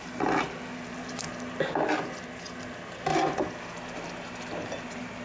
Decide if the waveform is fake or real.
real